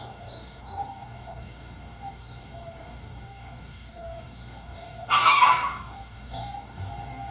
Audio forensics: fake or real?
fake